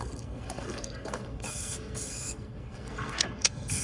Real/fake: fake